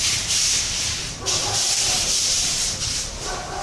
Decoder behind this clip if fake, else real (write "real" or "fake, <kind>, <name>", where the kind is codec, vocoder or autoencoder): fake, vocoder, BigVGAN v2